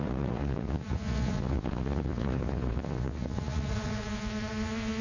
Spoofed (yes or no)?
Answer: yes